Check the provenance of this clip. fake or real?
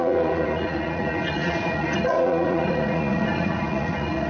fake